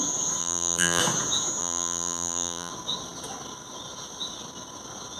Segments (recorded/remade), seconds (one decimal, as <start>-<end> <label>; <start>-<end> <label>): 0.0-0.4 recorded; 0.4-1.0 remade; 1.0-1.6 recorded; 1.6-2.7 remade; 2.7-5.2 recorded